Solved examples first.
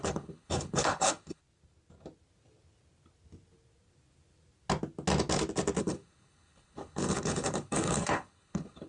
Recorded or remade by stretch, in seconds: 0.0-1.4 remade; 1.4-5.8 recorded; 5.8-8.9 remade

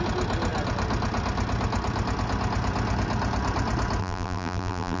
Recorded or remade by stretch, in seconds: 0.0-4.0 recorded; 4.0-5.0 remade

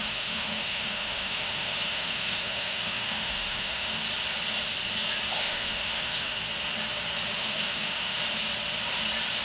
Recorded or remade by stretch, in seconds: 0.0-4.0 remade; 4.0-5.4 recorded; 5.4-6.4 remade; 6.4-7.4 recorded; 7.4-8.2 remade; 8.2-9.4 recorded